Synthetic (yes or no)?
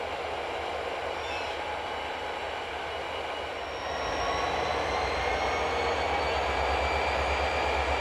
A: no